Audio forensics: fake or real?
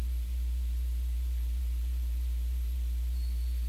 fake